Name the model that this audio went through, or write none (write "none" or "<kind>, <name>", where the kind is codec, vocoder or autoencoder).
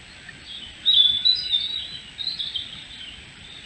none